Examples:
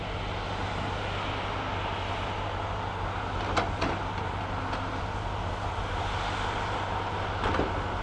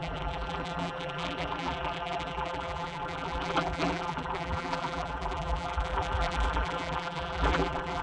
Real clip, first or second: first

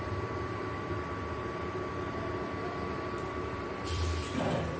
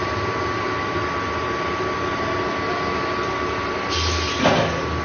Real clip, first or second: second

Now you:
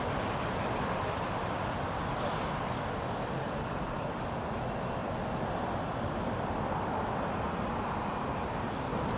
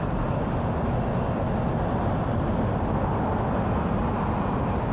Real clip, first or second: second